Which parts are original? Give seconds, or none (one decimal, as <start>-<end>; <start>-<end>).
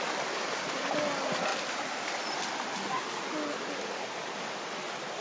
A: 0.0-5.2